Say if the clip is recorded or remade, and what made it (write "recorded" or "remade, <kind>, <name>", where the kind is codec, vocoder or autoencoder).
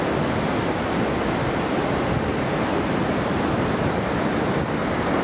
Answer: recorded